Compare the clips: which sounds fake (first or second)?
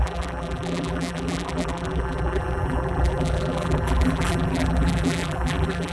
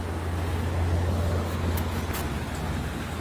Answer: first